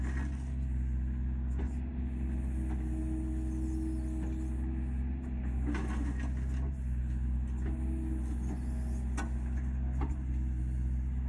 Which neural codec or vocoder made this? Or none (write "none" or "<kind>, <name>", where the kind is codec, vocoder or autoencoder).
none